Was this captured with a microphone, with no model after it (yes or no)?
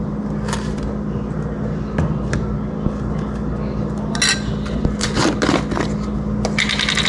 yes